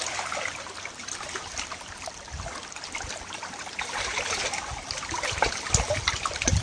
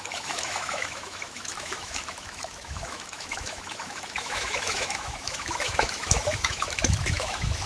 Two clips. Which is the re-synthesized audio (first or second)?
second